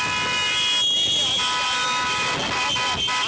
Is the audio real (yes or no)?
yes